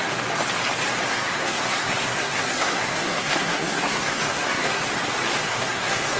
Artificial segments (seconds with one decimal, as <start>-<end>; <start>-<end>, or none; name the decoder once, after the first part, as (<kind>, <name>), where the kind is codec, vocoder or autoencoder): 1.1-4.8 (codec, SNAC); 5.3-6.2